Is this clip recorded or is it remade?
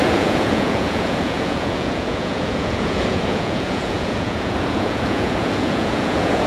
remade